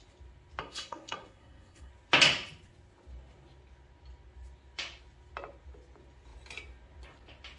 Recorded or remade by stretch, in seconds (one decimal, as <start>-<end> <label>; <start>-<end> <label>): 0.0-0.6 recorded; 0.6-1.9 remade; 1.9-7.6 recorded